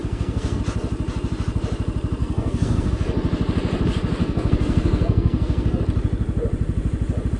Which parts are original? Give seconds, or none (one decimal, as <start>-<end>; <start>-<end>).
0.6-2.2; 2.9-4.2; 5.8-7.4